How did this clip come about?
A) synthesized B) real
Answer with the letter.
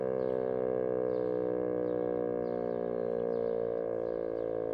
B